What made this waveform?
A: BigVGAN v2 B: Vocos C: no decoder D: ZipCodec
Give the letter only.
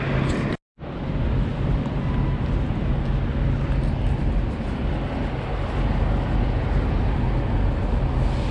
C